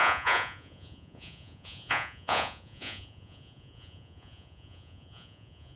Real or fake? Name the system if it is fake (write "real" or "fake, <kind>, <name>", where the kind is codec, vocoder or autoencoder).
fake, vocoder, Vocos